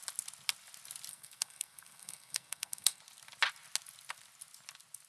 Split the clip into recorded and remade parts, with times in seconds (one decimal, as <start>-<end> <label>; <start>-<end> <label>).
0.0-1.1 recorded; 1.1-3.0 remade; 3.0-5.1 recorded